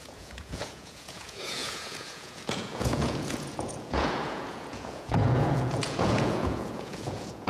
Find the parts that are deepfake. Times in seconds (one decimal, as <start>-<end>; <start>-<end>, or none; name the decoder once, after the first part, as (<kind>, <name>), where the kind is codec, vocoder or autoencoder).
0.0-7.5 (vocoder, Vocos)